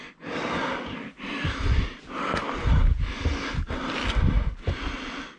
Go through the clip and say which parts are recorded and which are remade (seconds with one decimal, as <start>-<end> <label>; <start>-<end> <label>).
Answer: 0.0-5.4 recorded